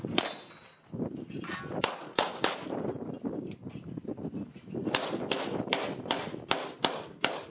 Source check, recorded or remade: recorded